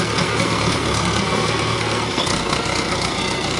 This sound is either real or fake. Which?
fake